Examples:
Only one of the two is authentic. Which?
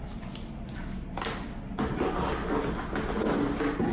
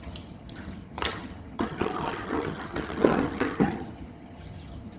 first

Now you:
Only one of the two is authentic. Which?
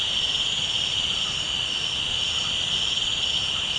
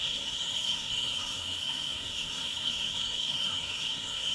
first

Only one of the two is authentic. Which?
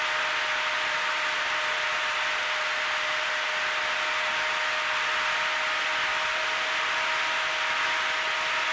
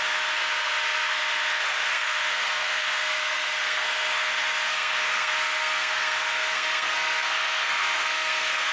first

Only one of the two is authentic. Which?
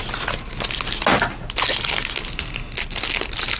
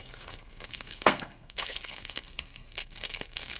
first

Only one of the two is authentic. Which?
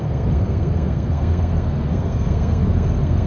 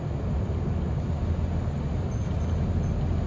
second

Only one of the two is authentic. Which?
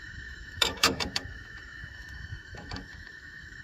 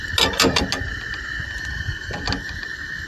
second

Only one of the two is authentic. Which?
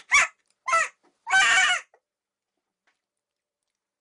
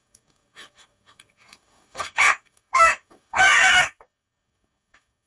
first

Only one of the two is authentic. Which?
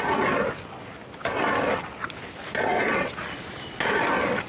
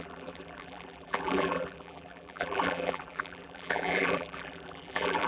first